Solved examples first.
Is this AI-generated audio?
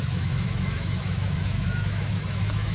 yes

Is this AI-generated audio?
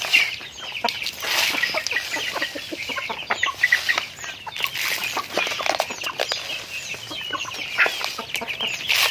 no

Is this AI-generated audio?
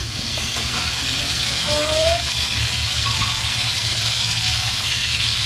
yes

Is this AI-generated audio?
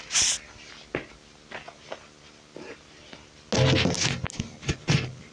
no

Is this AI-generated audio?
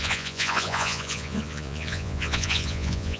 yes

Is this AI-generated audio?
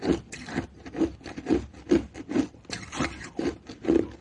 no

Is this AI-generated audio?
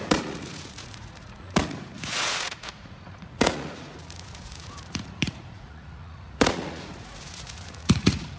yes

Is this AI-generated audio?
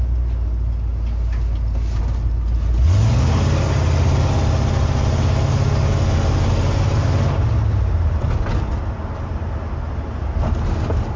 no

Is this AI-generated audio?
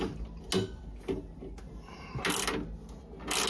no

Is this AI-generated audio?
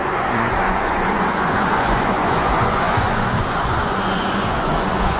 yes